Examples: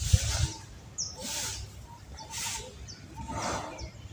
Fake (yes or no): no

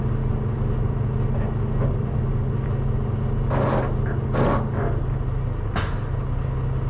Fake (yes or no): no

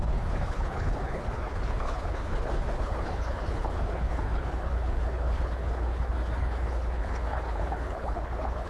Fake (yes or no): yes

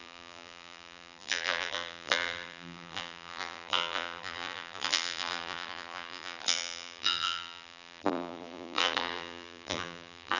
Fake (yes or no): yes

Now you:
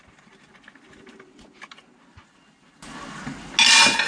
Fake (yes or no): no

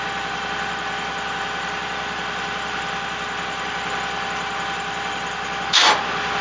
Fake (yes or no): yes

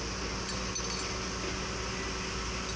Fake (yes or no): no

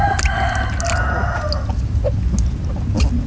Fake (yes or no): no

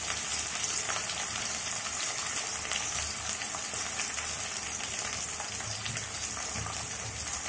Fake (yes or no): no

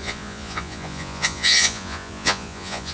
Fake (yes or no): yes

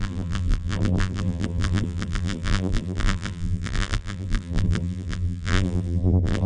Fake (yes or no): yes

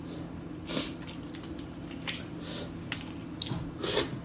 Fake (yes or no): no